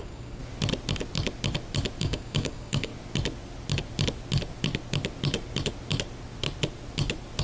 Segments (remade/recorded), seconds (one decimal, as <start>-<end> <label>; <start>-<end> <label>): 0.0-0.4 remade; 0.4-2.0 recorded; 2.0-2.9 remade; 2.9-7.4 recorded